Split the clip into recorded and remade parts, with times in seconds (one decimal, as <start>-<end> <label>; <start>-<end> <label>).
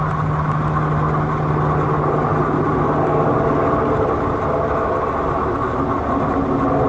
0.0-6.9 recorded